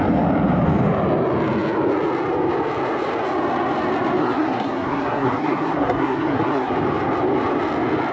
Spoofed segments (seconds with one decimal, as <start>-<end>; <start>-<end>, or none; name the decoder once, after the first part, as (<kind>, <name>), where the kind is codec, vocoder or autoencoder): 4.2-6.7 (codec, SNAC)